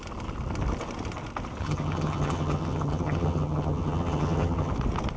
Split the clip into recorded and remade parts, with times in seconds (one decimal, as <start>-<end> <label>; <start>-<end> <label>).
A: 0.0-1.6 recorded; 1.6-4.7 remade; 4.7-5.2 recorded

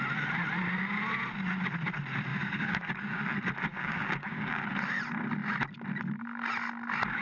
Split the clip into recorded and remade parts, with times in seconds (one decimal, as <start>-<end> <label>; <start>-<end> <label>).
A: 0.0-2.3 recorded; 2.3-3.2 remade; 3.2-3.7 recorded; 3.7-4.6 remade; 4.6-7.2 recorded

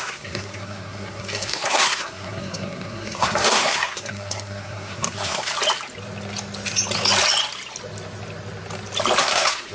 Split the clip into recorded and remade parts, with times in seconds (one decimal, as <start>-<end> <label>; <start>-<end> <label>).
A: 0.0-5.5 remade; 5.5-9.2 recorded; 9.2-9.7 remade

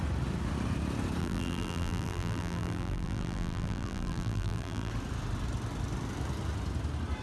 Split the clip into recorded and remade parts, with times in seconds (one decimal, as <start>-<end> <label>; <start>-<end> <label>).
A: 0.0-1.2 recorded; 1.2-4.9 remade; 4.9-7.2 recorded

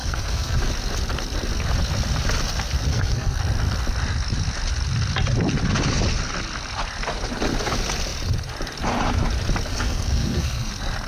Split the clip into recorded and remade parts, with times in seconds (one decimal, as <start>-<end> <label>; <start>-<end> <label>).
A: 0.0-0.6 remade; 0.6-2.9 recorded; 2.9-3.4 remade; 3.4-9.7 recorded; 9.7-10.7 remade; 10.7-11.1 recorded

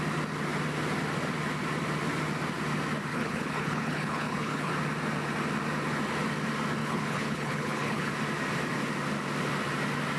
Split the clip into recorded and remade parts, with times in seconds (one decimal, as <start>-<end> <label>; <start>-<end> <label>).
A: 0.0-3.1 recorded; 3.1-4.7 remade; 4.7-6.8 recorded; 6.8-8.1 remade; 8.1-10.2 recorded

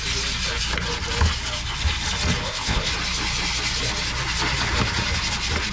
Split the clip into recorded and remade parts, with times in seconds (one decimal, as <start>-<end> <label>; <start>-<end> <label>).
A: 0.0-2.4 recorded; 2.4-2.9 remade; 2.9-5.7 recorded